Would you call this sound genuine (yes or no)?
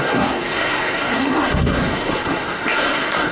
no